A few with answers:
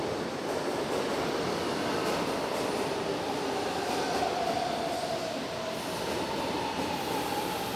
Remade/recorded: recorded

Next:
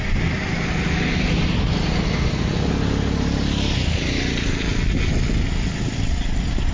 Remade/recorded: recorded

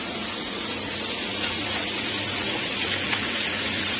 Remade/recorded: remade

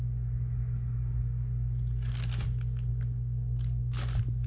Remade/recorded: recorded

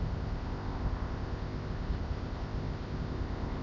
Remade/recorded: remade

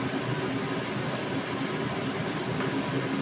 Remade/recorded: recorded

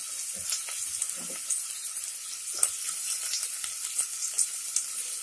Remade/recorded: recorded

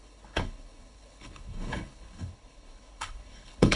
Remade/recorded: remade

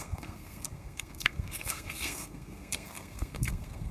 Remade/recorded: remade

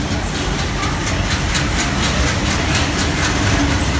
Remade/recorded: remade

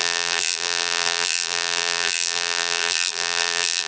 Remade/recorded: remade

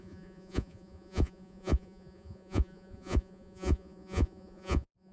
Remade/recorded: remade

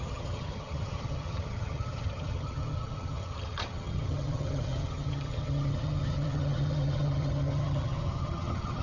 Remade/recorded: remade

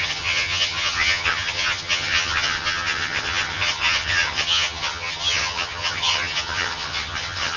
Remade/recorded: remade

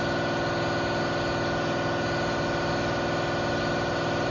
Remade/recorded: recorded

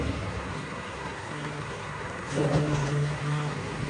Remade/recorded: remade